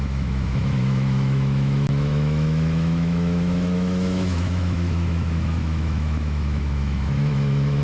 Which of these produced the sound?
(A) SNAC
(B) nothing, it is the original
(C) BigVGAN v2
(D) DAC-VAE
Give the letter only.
D